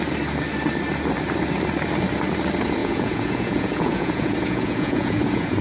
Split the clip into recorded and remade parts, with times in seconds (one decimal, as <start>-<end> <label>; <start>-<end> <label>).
0.0-2.8 recorded; 2.8-5.6 remade